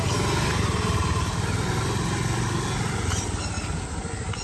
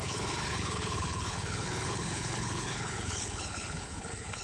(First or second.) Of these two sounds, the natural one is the first